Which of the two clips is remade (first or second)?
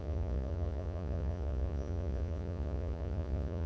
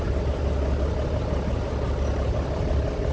first